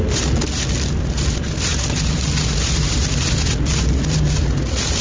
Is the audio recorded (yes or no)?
yes